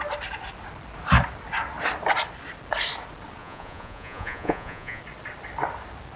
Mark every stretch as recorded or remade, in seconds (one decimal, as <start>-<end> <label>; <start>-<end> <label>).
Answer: 0.0-3.4 recorded; 3.4-5.0 remade; 5.0-6.2 recorded